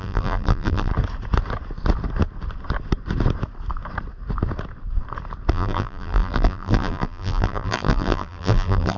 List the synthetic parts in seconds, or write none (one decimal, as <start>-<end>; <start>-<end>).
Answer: 0.0-0.9; 5.5-9.0